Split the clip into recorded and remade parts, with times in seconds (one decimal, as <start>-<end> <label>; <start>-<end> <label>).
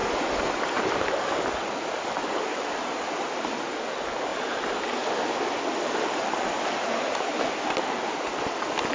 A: 0.0-8.9 recorded